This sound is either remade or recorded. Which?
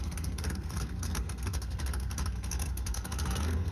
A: remade